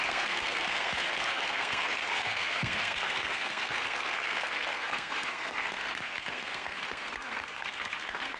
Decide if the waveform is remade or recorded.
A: remade